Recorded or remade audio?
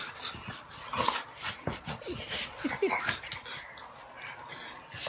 recorded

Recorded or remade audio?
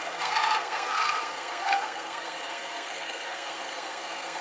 remade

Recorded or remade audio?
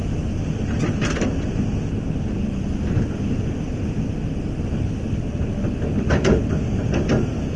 recorded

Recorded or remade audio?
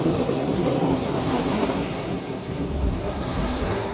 remade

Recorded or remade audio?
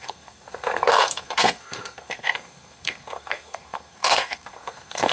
remade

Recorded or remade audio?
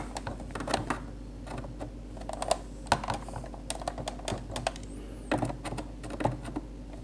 recorded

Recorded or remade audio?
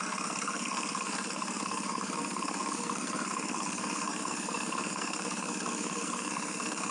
remade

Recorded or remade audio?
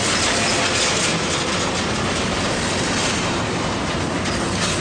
recorded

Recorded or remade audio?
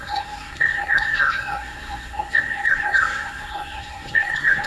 remade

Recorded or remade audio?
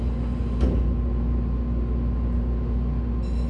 recorded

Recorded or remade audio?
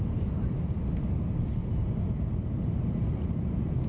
recorded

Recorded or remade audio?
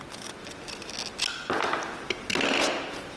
recorded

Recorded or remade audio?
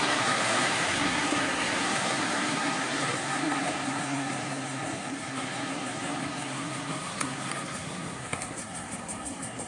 remade